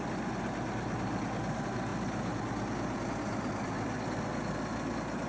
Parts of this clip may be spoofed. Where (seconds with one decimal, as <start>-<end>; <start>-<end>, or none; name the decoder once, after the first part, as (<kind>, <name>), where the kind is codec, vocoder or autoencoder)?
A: none